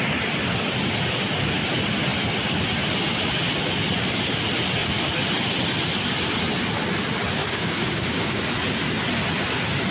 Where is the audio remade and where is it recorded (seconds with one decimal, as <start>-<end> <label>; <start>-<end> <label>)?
0.0-7.4 recorded; 7.4-8.4 remade; 8.4-9.9 recorded